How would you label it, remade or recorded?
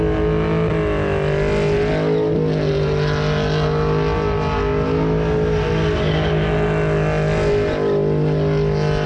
recorded